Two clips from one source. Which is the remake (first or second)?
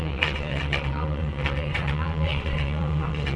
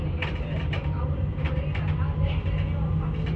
first